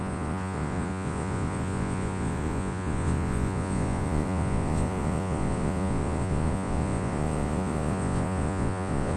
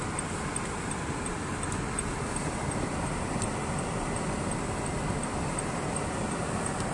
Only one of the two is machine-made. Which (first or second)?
first